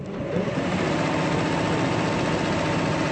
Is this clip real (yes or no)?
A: yes